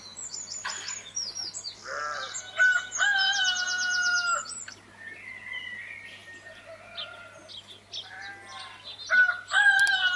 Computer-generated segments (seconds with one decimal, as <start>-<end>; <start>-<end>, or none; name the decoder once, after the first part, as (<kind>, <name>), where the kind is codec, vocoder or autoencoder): none